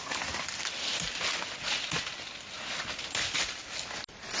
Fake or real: real